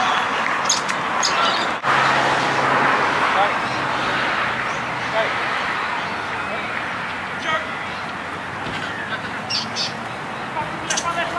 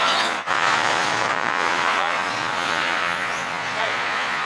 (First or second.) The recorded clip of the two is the first